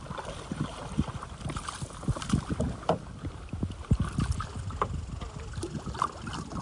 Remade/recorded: recorded